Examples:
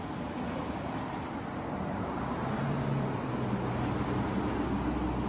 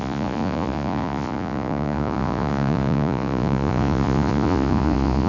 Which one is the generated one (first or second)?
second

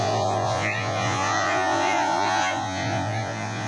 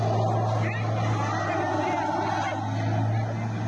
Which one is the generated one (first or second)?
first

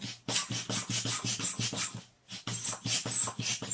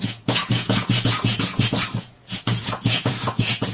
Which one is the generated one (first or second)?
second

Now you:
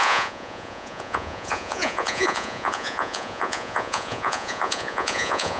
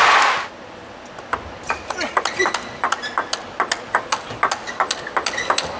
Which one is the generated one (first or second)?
first